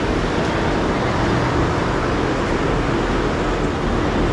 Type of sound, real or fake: real